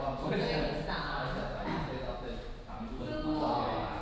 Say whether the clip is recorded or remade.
recorded